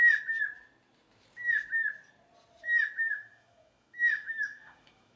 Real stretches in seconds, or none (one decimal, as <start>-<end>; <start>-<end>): 0.0-3.1